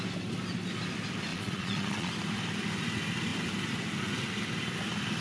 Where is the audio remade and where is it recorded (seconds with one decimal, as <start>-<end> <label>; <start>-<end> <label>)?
0.0-1.3 recorded; 1.3-2.1 remade; 2.1-5.2 recorded